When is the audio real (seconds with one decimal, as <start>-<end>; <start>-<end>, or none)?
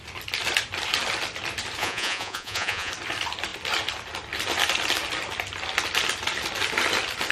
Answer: 0.0-1.8; 2.9-7.3